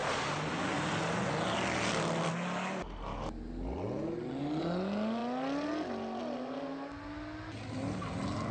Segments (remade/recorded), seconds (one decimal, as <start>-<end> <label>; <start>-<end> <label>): 0.0-8.5 recorded